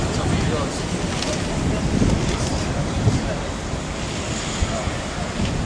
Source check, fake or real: real